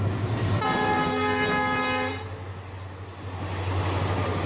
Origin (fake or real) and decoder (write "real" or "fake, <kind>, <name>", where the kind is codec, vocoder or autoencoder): real